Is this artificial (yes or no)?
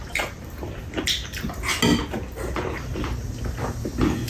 no